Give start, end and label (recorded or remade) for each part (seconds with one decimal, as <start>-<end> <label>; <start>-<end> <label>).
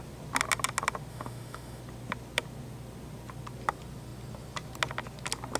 0.0-1.1 recorded; 1.1-1.8 remade; 1.8-5.6 recorded